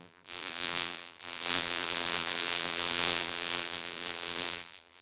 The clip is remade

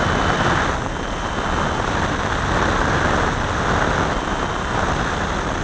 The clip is recorded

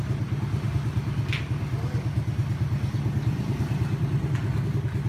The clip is recorded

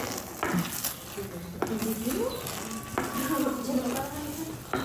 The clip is recorded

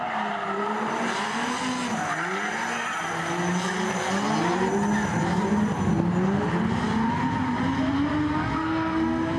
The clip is recorded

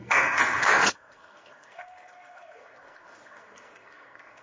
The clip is remade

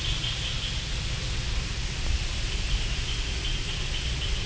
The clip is recorded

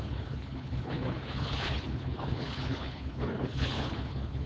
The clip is remade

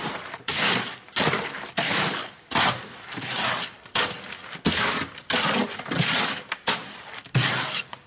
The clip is recorded